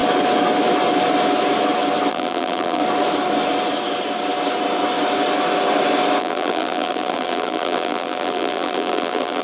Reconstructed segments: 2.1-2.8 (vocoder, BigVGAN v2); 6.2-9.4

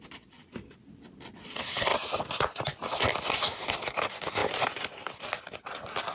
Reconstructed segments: none

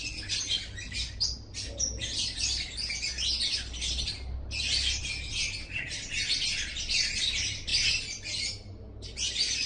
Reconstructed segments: none

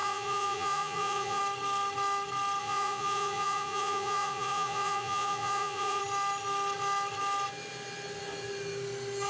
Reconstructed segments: 0.0-1.4 (vocoder, Vocos); 2.6-6.0

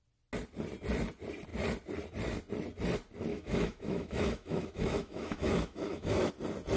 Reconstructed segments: 3.3-6.3 (autoencoder, DAC-VAE)